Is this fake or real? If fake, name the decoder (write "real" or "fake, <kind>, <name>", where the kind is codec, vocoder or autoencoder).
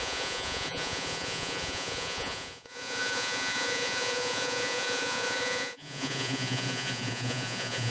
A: fake, vocoder, Vocos